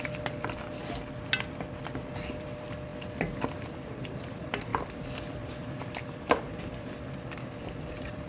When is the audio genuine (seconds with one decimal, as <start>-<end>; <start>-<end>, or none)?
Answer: 0.8-1.8; 2.9-4.0